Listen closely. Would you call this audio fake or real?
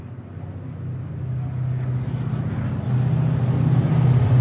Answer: real